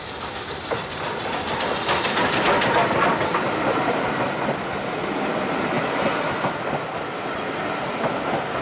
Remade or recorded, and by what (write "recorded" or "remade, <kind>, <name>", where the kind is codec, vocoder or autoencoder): recorded